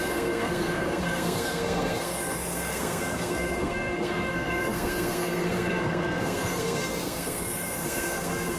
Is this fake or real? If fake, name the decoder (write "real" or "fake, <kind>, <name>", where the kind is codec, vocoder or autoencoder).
fake, codec, SNAC